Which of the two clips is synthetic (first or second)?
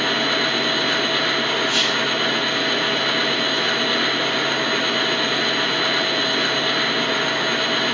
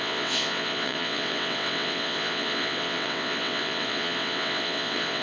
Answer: second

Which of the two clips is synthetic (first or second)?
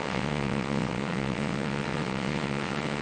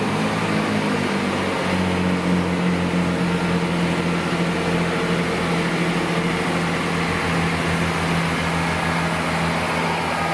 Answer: first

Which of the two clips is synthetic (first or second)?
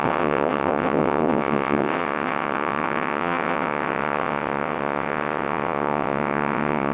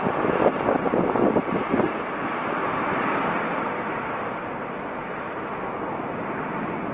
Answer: first